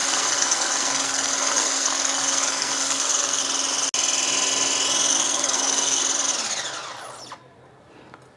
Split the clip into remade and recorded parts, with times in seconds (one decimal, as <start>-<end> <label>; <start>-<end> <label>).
0.0-3.4 remade; 3.4-5.1 recorded; 5.1-6.0 remade; 6.0-8.4 recorded